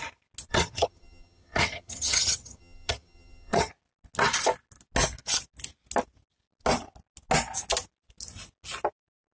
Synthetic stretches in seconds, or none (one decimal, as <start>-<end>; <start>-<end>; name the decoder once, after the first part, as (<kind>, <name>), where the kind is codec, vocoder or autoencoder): 0.5-3.7 (vocoder, HiFi-GAN)